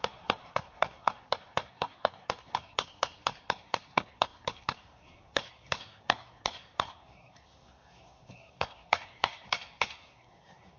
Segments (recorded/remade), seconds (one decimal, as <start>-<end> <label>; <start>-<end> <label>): 0.0-10.8 remade